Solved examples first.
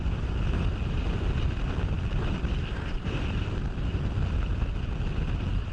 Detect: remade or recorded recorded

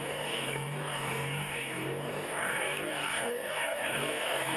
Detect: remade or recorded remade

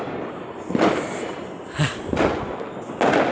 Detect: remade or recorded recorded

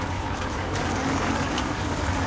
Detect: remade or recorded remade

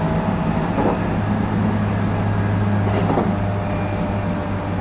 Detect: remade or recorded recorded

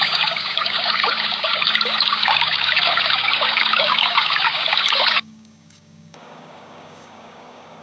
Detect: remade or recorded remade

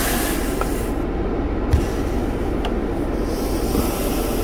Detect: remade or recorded recorded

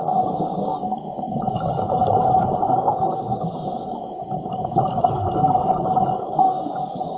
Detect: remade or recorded remade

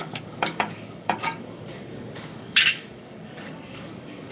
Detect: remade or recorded remade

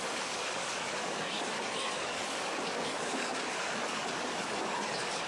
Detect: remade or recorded remade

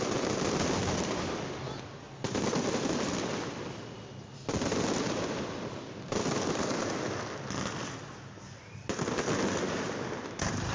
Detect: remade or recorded recorded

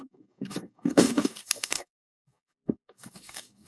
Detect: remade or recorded remade